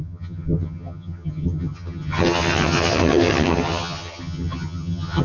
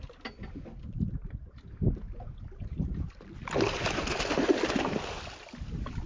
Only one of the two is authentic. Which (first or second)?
second